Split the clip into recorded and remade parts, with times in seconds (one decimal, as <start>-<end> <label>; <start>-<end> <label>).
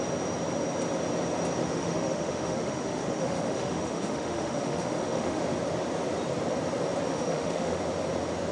0.0-1.6 recorded; 1.6-5.4 remade; 5.4-7.1 recorded; 7.1-7.8 remade; 7.8-8.5 recorded